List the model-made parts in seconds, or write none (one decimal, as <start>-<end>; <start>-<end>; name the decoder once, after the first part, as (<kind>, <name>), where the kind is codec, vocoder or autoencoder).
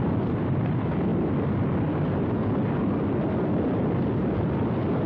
none